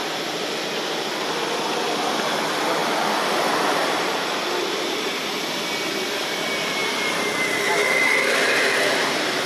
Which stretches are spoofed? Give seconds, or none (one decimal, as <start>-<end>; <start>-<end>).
0.0-1.0; 2.8-4.4